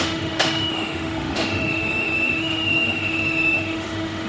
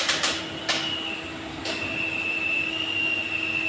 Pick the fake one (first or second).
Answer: first